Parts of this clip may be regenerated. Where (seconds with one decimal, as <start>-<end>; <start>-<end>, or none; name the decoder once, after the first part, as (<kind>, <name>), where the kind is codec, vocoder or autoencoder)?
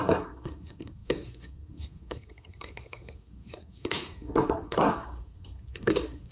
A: 0.0-6.3 (codec, SNAC)